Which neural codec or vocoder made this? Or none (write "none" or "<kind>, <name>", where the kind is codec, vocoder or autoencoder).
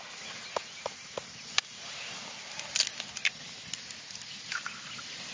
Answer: none